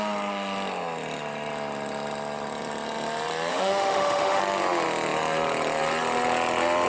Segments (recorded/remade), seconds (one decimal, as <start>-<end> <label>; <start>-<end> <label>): 0.0-3.5 recorded; 3.5-4.4 remade; 4.4-6.9 recorded